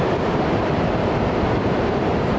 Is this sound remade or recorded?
recorded